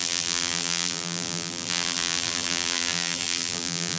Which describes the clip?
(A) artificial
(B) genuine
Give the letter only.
A